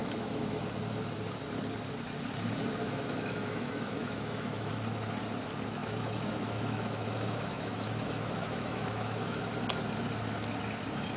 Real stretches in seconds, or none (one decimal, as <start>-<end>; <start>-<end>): 0.6-2.8; 4.7-5.8; 9.4-11.2